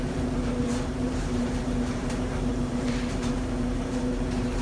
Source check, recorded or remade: remade